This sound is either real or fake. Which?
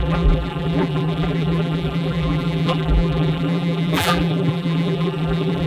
fake